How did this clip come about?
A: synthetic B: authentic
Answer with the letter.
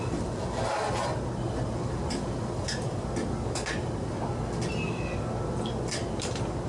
A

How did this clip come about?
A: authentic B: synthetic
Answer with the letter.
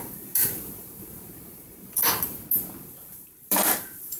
B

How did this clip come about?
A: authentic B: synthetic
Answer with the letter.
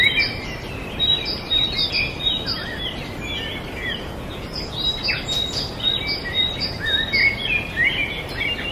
A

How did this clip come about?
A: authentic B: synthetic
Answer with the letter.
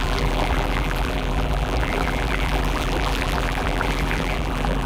B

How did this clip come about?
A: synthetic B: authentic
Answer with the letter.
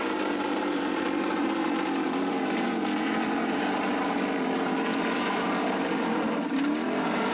A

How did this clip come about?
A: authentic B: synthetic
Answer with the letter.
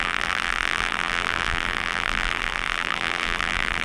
B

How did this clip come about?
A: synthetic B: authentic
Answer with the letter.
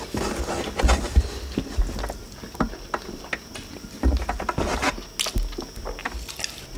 B